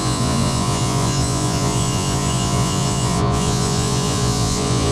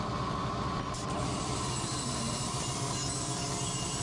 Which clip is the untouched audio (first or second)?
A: second